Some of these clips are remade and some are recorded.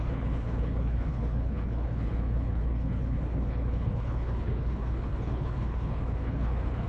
remade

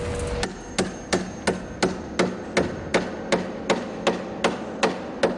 recorded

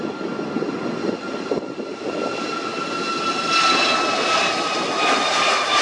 recorded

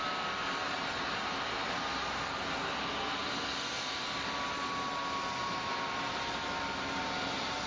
recorded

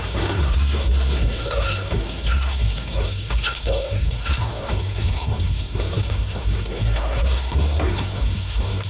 remade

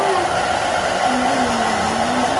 recorded